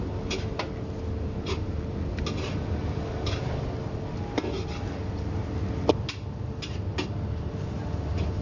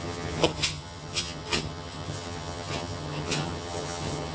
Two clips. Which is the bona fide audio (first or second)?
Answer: first